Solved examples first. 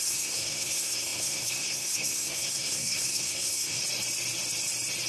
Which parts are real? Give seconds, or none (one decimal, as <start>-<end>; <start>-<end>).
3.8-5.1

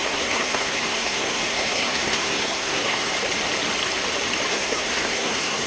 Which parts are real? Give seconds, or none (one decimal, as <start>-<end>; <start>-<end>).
3.1-4.5

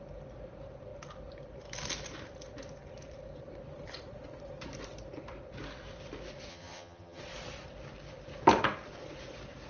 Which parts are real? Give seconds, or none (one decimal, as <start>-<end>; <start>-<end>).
0.0-6.5; 7.2-9.7